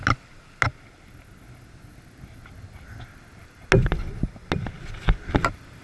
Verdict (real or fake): real